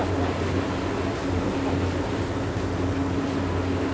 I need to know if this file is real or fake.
real